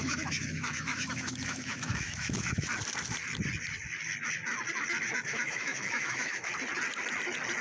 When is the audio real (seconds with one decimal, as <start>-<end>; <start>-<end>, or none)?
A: 2.7-5.1; 6.5-7.6